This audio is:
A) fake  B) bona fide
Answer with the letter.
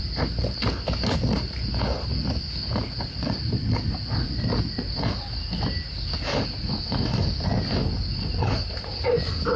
B